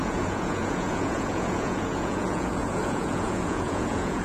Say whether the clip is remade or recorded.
remade